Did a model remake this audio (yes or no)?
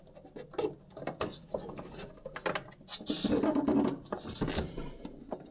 no